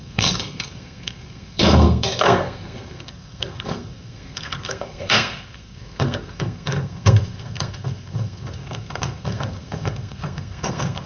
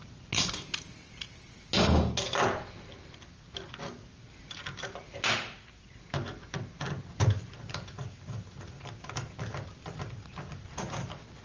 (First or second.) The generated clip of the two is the first